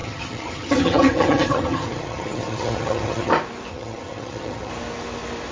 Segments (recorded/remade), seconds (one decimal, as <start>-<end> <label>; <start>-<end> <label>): 0.0-3.3 remade; 3.3-3.7 recorded; 3.7-4.7 remade; 4.7-5.5 recorded